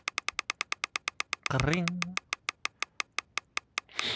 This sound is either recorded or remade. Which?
recorded